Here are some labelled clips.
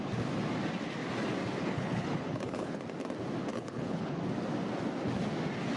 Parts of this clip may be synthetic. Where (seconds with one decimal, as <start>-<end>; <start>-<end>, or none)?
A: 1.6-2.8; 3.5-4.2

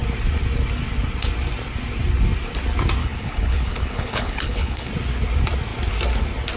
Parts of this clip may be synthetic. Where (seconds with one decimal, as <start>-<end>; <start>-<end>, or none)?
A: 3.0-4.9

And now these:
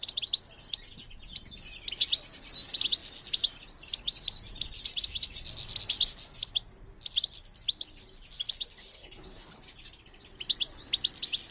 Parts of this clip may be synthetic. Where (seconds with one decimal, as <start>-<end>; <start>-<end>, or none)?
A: 8.8-9.6

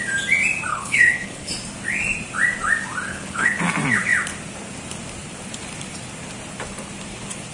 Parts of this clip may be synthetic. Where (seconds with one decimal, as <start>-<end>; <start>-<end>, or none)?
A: 0.7-1.5; 3.1-3.6